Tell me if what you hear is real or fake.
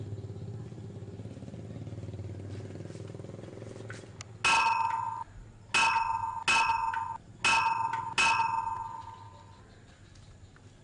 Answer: real